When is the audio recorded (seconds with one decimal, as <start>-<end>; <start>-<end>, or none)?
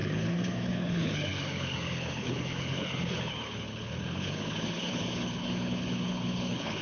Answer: none